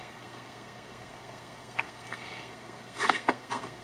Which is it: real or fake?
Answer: fake